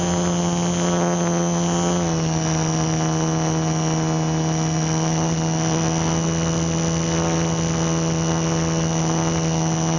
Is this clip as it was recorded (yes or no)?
yes